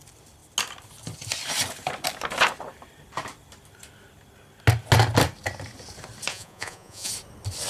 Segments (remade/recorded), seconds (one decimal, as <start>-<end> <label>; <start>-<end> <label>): 0.0-6.3 recorded; 6.3-7.1 remade; 7.1-7.7 recorded